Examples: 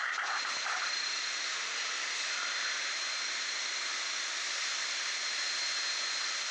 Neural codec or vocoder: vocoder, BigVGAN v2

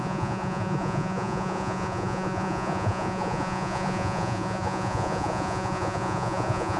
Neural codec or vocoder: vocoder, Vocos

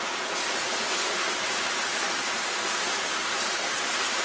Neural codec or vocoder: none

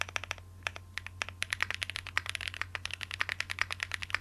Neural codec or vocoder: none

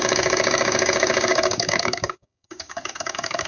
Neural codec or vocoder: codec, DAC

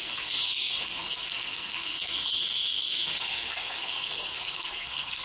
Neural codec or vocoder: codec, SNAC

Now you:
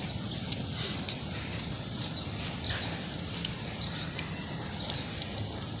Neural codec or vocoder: none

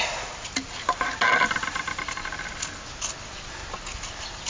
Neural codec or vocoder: none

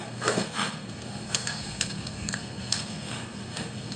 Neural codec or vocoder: codec, SNAC